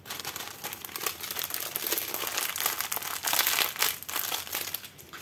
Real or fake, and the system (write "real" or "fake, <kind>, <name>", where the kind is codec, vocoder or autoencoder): real